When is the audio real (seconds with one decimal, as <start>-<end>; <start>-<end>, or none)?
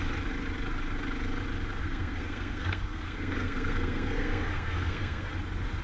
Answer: 0.0-1.8; 5.3-5.8